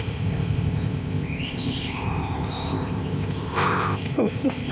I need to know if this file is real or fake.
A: fake